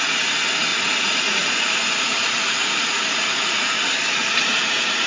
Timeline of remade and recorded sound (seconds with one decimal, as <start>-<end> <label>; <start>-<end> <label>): 0.0-0.7 recorded; 0.7-3.8 remade; 3.8-4.2 recorded; 4.2-5.1 remade